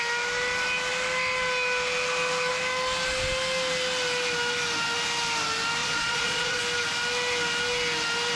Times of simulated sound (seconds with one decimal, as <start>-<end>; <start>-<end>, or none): 5.8-6.6